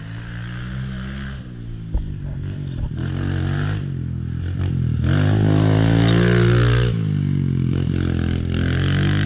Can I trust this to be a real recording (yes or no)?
yes